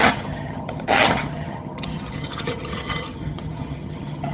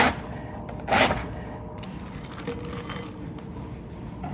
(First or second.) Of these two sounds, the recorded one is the second